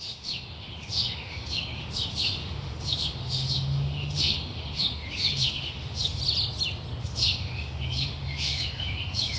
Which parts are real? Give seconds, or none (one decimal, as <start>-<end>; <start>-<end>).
6.2-7.0

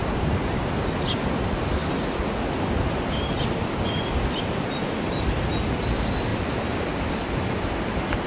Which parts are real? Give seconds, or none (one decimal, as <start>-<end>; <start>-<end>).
0.0-8.3

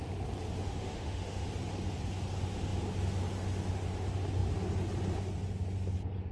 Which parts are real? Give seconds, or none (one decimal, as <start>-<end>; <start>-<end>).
0.0-0.6; 1.5-6.3

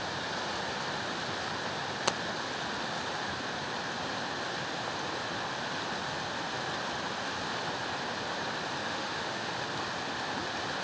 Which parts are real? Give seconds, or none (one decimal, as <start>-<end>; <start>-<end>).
0.0-8.8; 9.5-10.8

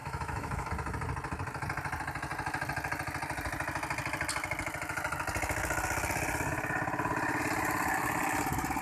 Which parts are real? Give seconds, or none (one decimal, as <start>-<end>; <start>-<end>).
0.7-8.8

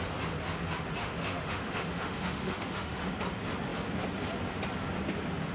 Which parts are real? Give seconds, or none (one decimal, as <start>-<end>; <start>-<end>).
0.0-1.0; 3.0-5.5

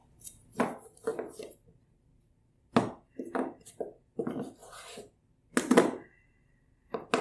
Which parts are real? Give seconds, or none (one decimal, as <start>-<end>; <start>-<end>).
0.0-7.2